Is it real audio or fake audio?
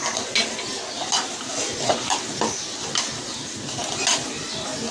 real